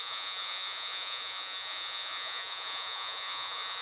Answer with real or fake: fake